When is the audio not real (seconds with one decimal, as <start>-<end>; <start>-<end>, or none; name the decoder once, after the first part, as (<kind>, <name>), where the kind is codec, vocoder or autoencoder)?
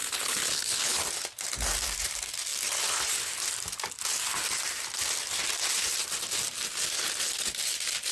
0.0-1.0 (codec, HILCodec)